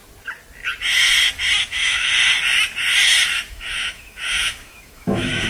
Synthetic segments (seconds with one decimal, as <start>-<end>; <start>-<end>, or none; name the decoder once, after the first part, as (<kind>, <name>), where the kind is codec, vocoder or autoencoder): 1.7-2.1 (autoencoder, DAC-VAE); 3.5-5.5